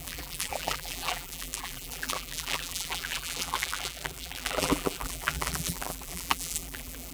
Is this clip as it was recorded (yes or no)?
no